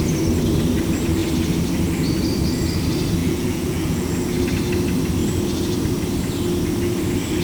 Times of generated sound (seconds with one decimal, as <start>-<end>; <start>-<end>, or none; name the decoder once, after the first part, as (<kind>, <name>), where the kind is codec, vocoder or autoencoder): 3.2-4.1 (vocoder, Vocos)

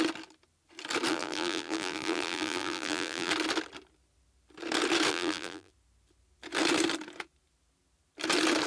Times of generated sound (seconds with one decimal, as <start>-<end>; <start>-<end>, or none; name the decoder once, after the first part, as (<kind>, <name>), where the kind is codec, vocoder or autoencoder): 1.1-3.3 (vocoder, BigVGAN v2); 5.1-5.7

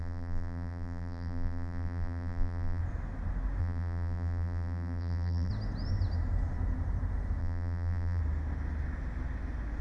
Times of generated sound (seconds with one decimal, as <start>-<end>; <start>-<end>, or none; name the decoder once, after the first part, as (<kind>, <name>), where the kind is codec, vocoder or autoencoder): 0.0-2.8 (vocoder, BigVGAN v2); 3.6-5.5; 7.4-8.2

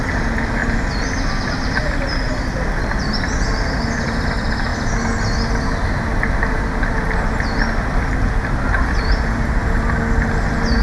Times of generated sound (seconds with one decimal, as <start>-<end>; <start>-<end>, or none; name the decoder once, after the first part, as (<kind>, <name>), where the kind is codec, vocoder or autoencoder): none

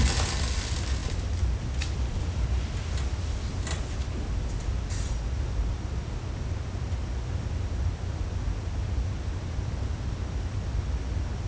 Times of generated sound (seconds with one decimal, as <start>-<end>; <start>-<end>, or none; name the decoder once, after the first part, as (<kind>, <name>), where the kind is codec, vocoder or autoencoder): none

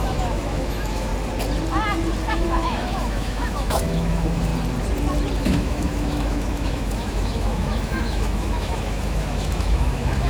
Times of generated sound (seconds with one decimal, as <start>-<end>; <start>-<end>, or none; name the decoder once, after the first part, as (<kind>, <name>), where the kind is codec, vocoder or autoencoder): 0.0-1.1 (autoencoder, DAC-VAE); 2.3-4.5; 5.4-10.3